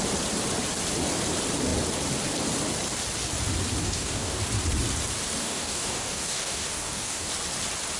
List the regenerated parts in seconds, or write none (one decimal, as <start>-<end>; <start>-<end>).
3.8-4.4; 5.4-7.3